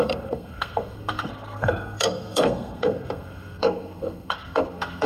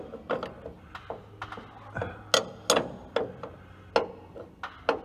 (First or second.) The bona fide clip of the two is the second